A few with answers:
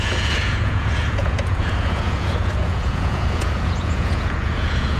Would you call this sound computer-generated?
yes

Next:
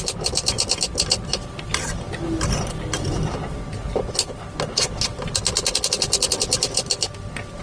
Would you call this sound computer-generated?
no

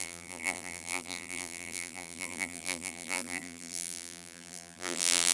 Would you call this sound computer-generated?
yes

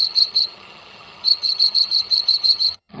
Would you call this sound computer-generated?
yes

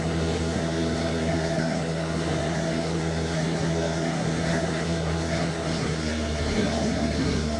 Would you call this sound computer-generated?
yes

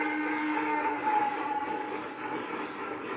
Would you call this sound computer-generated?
yes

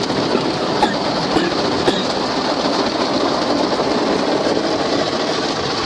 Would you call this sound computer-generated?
no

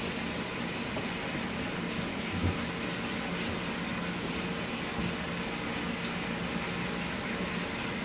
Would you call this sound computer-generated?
no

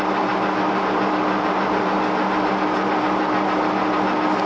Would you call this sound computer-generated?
no